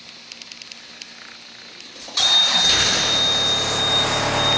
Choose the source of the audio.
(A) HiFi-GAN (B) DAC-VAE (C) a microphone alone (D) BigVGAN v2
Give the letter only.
C